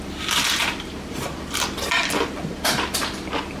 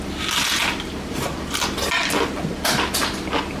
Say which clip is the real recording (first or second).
second